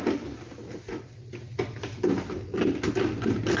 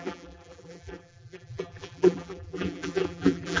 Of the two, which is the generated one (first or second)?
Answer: second